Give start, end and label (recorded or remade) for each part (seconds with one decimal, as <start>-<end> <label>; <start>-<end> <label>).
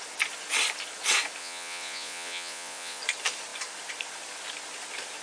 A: 0.0-1.4 recorded; 1.4-3.0 remade; 3.0-5.2 recorded